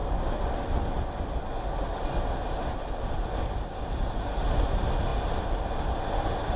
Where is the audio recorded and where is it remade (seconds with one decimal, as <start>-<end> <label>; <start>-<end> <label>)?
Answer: 0.0-6.6 recorded